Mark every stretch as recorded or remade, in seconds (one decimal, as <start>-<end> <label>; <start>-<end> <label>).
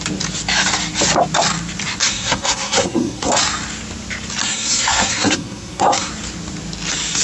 0.0-2.0 recorded; 2.0-3.3 remade; 3.3-4.4 recorded; 4.4-6.1 remade; 6.1-7.2 recorded